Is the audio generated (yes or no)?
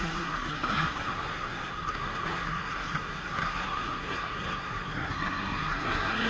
yes